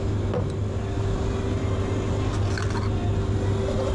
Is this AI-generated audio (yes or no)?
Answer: no